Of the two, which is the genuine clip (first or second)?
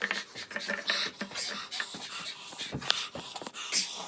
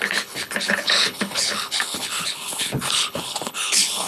first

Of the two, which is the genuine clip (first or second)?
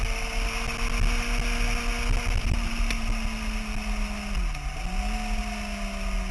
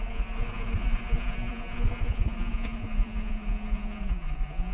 first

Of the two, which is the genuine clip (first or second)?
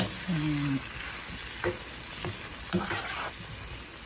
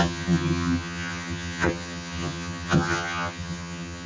first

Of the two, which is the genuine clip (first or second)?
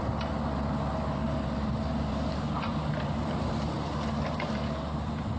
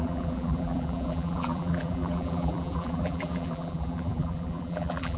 first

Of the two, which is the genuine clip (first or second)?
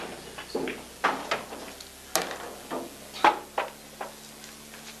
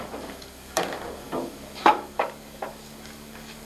first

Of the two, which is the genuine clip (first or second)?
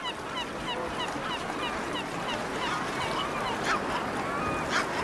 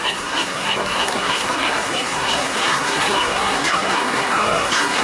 first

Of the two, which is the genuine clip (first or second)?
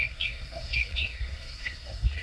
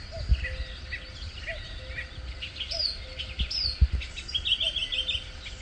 second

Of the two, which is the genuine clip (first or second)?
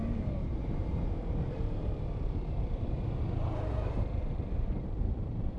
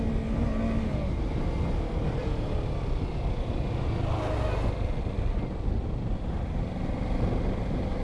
second